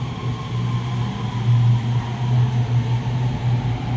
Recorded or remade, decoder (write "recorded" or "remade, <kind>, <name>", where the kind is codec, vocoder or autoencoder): recorded